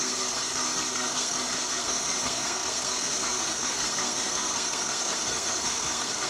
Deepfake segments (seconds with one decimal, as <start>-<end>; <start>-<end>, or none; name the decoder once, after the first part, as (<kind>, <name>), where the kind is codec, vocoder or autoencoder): 0.0-6.3 (codec, SNAC)